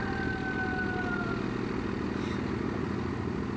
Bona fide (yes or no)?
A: yes